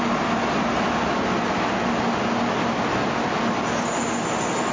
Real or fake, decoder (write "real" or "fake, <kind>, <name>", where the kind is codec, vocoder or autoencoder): real